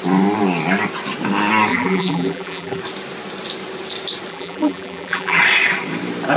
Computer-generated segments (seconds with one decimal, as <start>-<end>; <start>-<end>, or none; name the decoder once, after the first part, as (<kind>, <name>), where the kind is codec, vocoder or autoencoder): 1.7-2.8 (vocoder, BigVGAN v2); 4.3-5.4